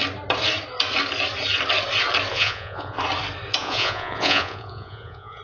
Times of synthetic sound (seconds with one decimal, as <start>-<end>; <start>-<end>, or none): 2.3-3.0; 3.6-5.4